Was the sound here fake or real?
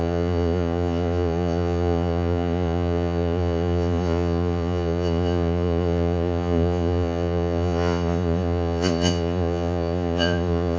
fake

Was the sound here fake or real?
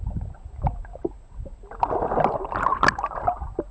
real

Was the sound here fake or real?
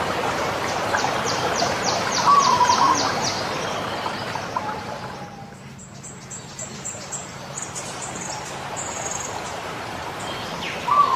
fake